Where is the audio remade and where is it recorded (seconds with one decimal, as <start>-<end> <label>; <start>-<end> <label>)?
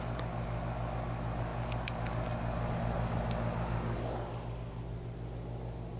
0.0-6.0 recorded